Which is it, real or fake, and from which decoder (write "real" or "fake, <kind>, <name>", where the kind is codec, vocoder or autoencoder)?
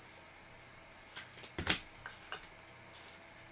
real